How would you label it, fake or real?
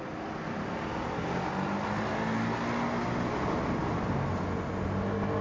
real